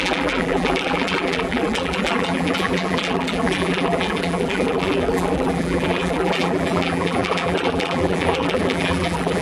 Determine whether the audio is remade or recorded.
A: remade